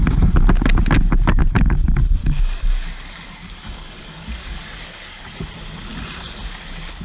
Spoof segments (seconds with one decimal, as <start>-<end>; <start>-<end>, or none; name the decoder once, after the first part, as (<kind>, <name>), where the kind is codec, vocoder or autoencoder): 2.2-5.5 (codec, DAC)